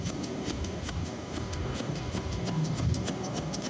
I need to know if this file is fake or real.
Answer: fake